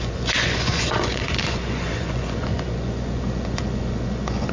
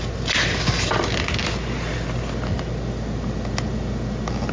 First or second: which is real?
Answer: second